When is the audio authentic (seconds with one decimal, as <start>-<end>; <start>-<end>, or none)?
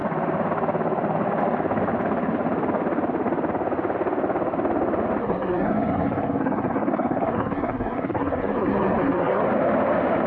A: 0.0-5.2; 9.4-10.3